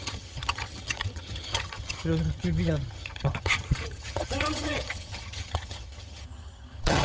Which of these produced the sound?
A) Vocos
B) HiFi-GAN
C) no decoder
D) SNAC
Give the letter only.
B